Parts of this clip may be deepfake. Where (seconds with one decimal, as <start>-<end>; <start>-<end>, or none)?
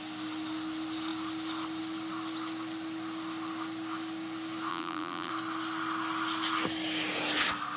4.7-5.3